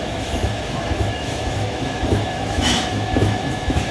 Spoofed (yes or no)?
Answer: yes